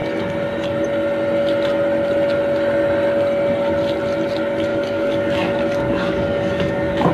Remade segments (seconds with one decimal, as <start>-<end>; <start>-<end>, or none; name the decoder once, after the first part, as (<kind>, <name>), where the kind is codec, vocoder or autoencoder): 4.7-7.1 (codec, DAC)